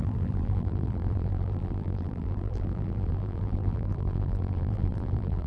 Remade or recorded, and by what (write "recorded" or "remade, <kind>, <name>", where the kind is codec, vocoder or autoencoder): remade, vocoder, BigVGAN v2